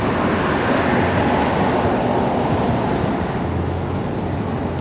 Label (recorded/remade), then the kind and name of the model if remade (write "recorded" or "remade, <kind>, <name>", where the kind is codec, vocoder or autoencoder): recorded